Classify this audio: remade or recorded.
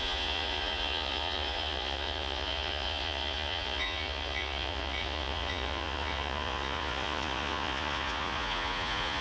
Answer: remade